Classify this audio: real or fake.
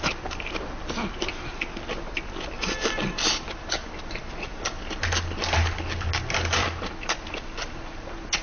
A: real